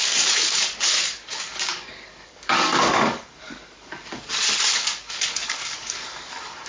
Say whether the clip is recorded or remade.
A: remade